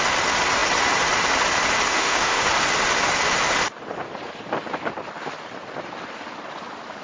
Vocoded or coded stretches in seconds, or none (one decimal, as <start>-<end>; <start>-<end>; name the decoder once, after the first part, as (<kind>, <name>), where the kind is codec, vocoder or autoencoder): 1.9-2.5 (autoencoder, DAC-VAE)